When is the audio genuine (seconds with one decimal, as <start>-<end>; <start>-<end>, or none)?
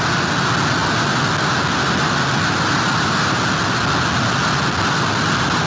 0.0-5.7